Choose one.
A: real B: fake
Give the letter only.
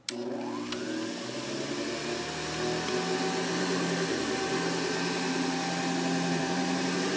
A